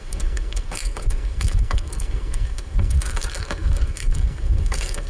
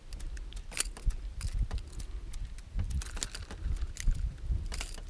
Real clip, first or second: second